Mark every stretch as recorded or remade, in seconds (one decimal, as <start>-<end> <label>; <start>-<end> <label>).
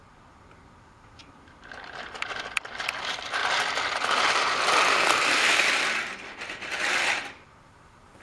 0.0-8.2 remade